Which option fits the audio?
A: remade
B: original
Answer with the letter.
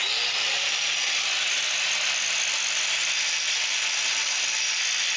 B